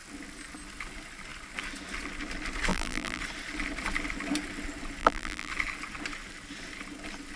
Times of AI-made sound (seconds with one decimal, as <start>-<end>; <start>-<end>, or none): 2.7-3.2; 5.0-5.5